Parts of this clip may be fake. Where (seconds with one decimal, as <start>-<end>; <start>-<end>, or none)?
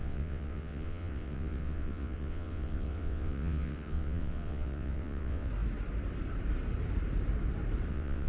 0.0-5.5; 7.9-8.3